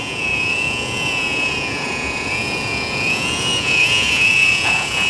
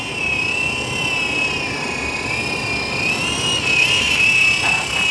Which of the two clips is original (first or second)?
second